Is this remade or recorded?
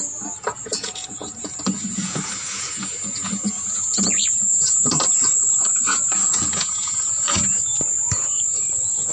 remade